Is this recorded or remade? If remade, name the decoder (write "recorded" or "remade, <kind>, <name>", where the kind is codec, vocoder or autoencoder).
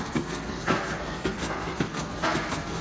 remade, codec, SNAC